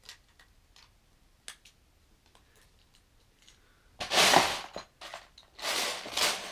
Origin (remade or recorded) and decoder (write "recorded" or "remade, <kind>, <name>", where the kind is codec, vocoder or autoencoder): recorded